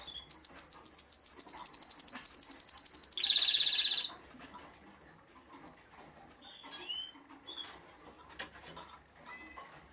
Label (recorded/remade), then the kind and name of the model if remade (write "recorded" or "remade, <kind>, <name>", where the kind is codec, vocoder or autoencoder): recorded